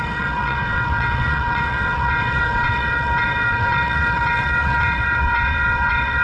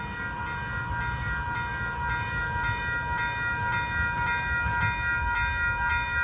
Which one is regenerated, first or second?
first